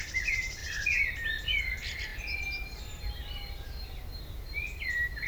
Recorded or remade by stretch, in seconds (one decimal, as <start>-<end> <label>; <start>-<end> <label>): 0.0-0.6 remade; 0.6-1.6 recorded; 1.6-5.3 remade